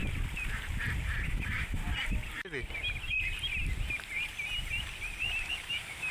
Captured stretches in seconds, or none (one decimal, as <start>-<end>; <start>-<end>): 0.0-1.2; 1.8-5.5